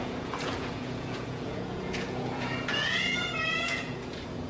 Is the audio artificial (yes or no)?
yes